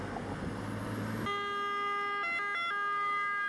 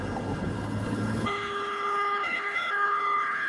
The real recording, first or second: first